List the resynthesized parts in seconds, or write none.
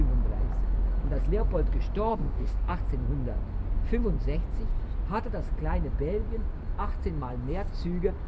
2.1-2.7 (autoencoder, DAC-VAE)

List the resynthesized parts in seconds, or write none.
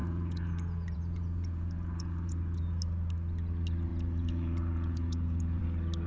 0.0-2.6 (vocoder, Vocos); 3.9-5.6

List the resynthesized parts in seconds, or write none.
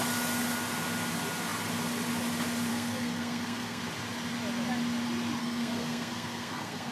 2.7-3.8 (codec, SNAC); 5.4-6.9